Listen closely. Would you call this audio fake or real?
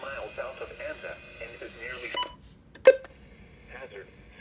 real